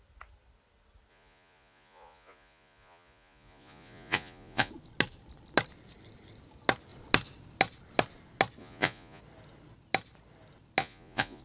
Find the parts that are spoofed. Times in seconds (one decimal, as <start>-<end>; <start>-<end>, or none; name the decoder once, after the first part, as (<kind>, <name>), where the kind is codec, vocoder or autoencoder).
1.1-4.7 (vocoder, Vocos); 8.6-9.2; 10.8-11.4